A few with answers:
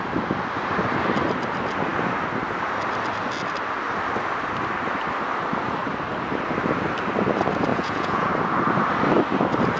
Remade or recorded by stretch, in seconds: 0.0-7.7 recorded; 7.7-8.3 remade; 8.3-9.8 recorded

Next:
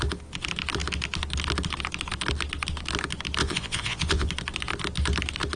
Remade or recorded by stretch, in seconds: 0.0-3.4 recorded; 3.4-4.3 remade; 4.3-5.6 recorded

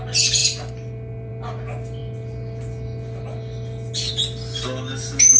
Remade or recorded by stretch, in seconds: 0.0-5.4 recorded

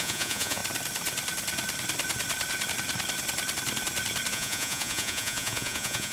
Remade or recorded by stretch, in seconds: 0.0-0.6 remade; 0.6-4.3 recorded; 4.3-6.1 remade

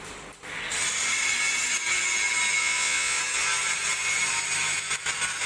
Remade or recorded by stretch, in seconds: 0.0-2.6 recorded; 2.6-3.2 remade; 3.2-5.5 recorded

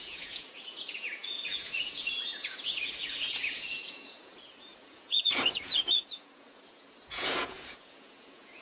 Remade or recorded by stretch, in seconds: 0.0-8.6 remade

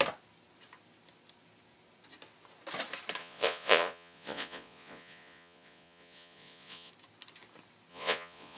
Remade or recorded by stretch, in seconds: 0.0-3.2 recorded; 3.2-6.9 remade; 6.9-7.9 recorded; 7.9-8.6 remade